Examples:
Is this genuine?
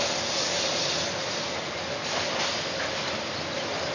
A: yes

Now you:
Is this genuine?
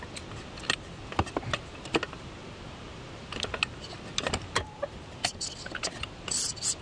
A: yes